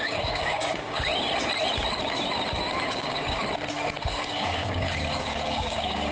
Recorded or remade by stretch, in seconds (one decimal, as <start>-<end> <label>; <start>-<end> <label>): 0.0-1.1 remade; 1.1-2.9 recorded; 2.9-3.4 remade; 3.4-4.0 recorded; 4.0-6.1 remade